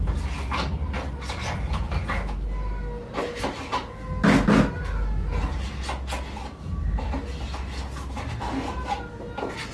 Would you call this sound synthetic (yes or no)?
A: no